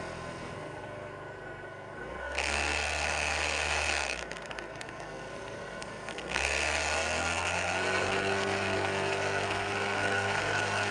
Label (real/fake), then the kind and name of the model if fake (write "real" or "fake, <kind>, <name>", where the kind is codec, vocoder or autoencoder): fake, codec, SNAC